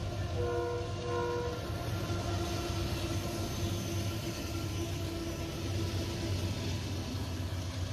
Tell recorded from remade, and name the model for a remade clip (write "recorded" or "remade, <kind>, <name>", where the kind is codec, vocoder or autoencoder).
recorded